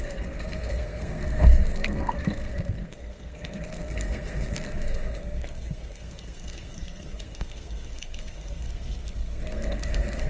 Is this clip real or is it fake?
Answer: fake